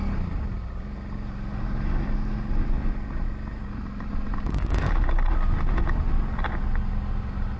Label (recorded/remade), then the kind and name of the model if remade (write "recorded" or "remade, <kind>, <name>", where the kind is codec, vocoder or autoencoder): recorded